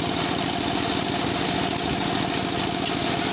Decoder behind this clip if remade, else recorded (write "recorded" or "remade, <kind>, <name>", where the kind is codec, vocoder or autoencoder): recorded